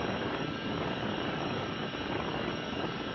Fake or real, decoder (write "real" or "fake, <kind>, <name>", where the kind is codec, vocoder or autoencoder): fake, codec, DAC